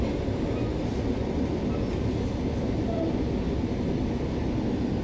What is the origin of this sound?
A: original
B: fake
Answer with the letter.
A